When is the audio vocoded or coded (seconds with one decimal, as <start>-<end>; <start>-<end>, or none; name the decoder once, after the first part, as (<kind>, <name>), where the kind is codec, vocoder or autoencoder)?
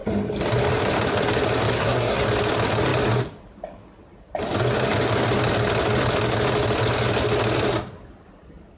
1.7-2.2 (codec, SNAC)